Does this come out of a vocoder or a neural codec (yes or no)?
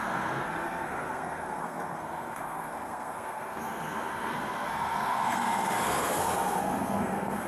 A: yes